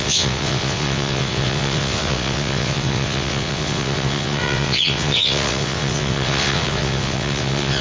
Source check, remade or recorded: remade